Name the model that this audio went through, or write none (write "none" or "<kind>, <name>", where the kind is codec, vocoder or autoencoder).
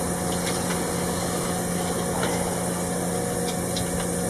none